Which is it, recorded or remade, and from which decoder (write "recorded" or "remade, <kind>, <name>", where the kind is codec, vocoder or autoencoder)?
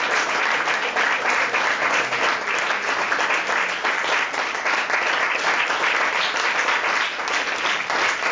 recorded